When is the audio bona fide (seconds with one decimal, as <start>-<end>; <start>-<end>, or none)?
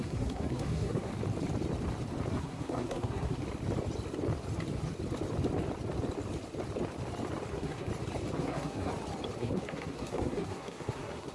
1.1-2.3; 3.4-7.5; 7.9-8.4; 8.9-9.4